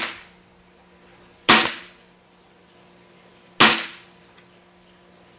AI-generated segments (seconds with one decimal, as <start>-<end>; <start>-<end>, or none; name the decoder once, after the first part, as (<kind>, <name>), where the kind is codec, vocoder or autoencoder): none